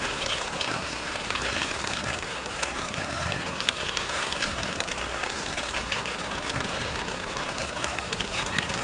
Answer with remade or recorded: remade